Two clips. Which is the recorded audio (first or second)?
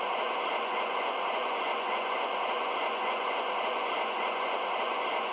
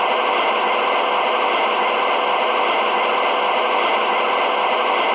second